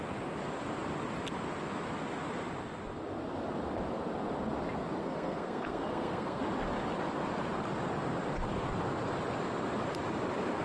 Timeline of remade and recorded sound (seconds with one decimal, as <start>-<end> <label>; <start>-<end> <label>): 0.0-5.0 recorded; 5.0-6.4 remade; 6.4-10.6 recorded